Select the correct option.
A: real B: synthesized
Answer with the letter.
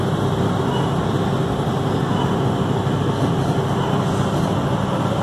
A